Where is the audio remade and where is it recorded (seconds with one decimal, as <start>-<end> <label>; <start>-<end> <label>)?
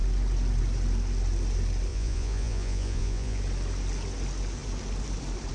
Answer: 0.0-1.9 recorded; 1.9-3.4 remade; 3.4-5.5 recorded